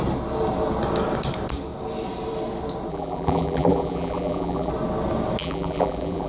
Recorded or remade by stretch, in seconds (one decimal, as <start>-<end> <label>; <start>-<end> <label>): 0.0-2.9 recorded; 2.9-4.7 remade; 4.7-5.4 recorded; 5.4-6.3 remade